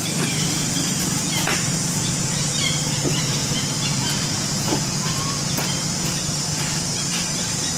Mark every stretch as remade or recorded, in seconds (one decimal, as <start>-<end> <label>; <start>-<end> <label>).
0.0-1.7 recorded; 1.7-2.5 remade; 2.5-3.4 recorded; 3.4-5.1 remade; 5.1-7.8 recorded